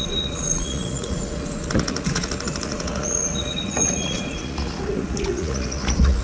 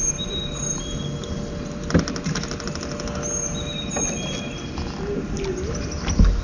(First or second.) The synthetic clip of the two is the first